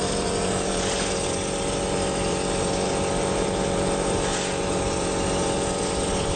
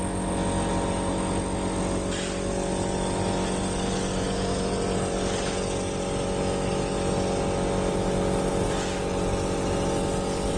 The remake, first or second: first